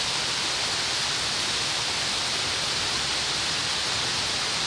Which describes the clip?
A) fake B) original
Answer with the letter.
B